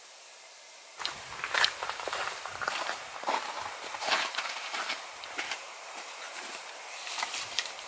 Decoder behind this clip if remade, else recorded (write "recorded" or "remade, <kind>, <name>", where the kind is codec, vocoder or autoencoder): remade, vocoder, BigVGAN v2